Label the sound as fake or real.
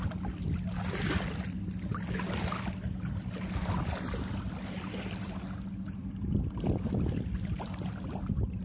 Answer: real